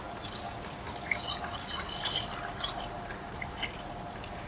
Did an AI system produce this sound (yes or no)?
no